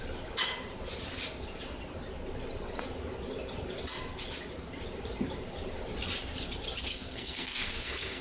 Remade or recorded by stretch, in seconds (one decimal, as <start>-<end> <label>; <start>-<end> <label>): 0.0-6.9 recorded; 6.9-8.2 remade